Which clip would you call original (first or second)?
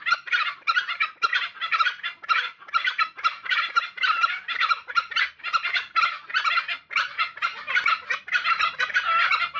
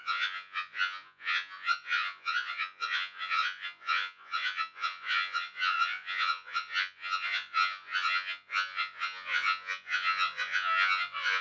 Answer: first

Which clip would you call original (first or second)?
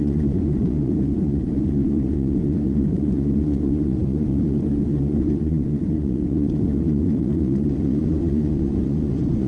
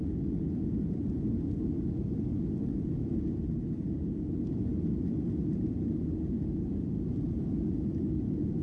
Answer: second